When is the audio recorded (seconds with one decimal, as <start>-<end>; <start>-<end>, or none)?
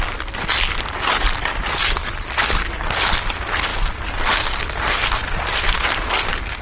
0.0-6.6